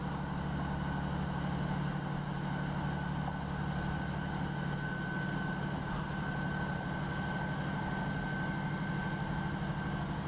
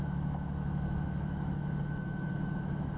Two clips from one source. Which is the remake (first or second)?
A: second